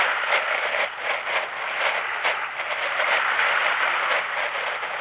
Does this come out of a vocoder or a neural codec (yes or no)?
no